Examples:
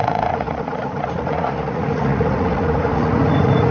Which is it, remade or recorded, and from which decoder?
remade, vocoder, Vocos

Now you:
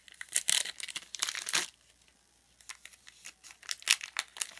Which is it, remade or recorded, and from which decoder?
recorded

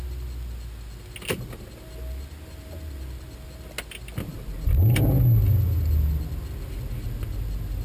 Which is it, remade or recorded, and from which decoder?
recorded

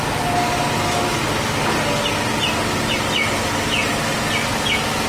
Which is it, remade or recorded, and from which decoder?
recorded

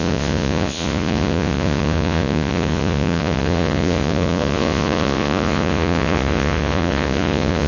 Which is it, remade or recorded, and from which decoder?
remade, vocoder, Vocos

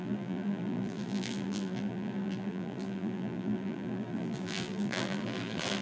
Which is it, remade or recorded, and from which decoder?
remade, vocoder, BigVGAN v2